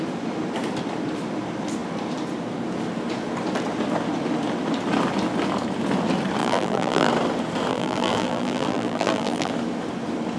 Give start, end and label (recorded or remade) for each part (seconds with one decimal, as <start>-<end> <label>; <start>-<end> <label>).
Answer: 0.0-6.4 recorded; 6.4-7.1 remade; 7.1-7.7 recorded; 7.7-9.5 remade; 9.5-10.4 recorded